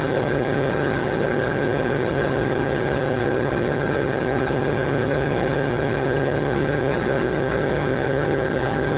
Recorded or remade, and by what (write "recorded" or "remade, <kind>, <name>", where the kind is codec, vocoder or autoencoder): remade, vocoder, HiFi-GAN